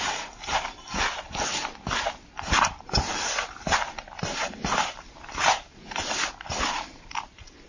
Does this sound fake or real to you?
fake